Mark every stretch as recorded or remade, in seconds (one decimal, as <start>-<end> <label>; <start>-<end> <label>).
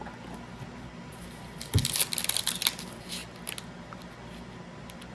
0.0-5.1 recorded